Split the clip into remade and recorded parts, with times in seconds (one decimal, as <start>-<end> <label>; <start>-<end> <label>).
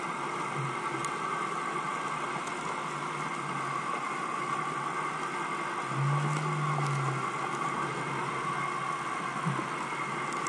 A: 0.0-10.5 recorded